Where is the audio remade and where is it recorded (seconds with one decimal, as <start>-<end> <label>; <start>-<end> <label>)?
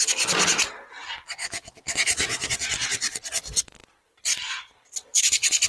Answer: 0.0-1.4 recorded; 1.4-2.5 remade; 2.5-5.7 recorded